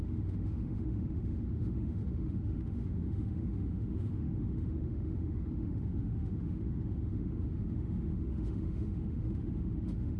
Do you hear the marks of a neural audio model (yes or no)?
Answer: yes